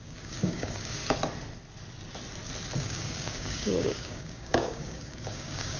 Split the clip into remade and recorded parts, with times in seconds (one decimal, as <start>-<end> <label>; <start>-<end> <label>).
0.0-1.0 remade; 1.0-2.8 recorded; 2.8-5.8 remade